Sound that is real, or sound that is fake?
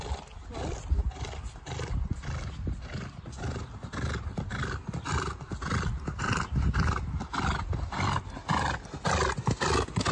real